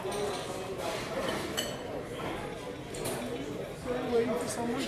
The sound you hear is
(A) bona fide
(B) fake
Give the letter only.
A